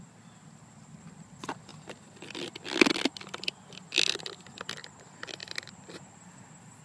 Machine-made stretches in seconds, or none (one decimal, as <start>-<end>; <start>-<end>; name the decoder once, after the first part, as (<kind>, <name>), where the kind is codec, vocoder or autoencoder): 5.4-6.0 (vocoder, BigVGAN v2)